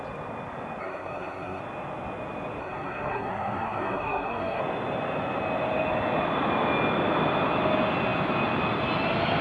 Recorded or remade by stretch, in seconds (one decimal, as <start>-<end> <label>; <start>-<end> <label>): 0.0-0.8 recorded; 0.8-1.6 remade; 1.6-2.6 recorded; 2.6-4.6 remade; 4.6-9.4 recorded